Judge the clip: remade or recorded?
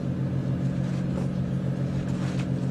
recorded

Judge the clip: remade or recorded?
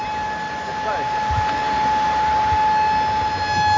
recorded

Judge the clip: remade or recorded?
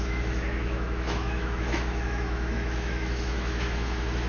remade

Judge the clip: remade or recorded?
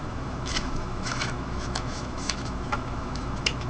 remade